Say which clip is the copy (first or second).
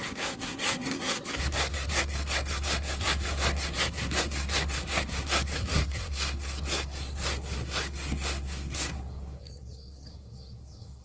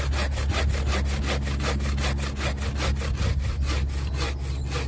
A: first